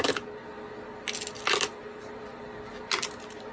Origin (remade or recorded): recorded